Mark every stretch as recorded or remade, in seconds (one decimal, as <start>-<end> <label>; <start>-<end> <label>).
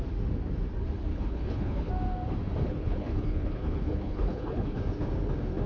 0.0-1.1 recorded; 1.1-1.9 remade; 1.9-2.6 recorded; 2.6-4.8 remade; 4.8-5.7 recorded